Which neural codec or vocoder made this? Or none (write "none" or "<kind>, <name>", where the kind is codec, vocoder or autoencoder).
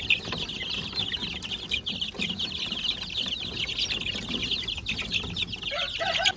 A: none